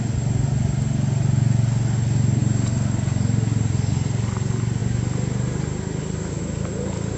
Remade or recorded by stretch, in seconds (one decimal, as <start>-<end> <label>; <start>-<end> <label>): 0.0-7.2 recorded